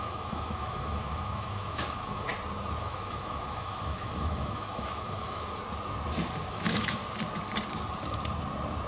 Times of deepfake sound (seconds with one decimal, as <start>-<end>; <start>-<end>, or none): 0.0-2.3; 2.8-5.6; 6.5-7.0